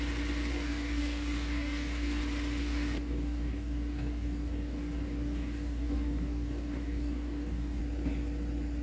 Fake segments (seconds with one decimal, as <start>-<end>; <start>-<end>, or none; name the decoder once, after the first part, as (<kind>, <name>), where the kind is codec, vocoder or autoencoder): 0.5-2.2 (codec, DAC); 2.6-7.8